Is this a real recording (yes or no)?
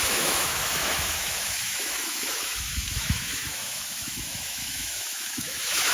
no